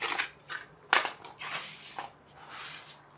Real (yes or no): yes